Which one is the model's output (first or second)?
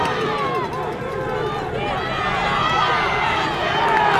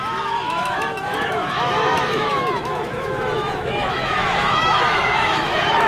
second